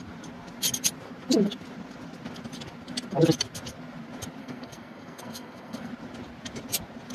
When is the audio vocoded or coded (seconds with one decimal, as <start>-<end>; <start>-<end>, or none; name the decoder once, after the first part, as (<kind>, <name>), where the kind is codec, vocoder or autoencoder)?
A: 4.4-5.9 (codec, SNAC)